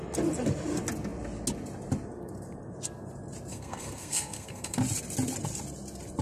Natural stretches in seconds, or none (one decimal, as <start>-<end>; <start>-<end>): 0.0-3.5; 4.8-6.2